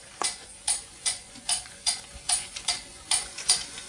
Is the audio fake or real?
fake